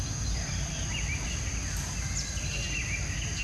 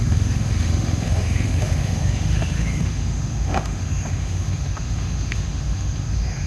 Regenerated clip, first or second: second